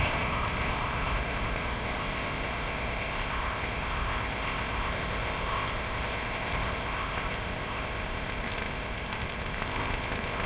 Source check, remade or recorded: remade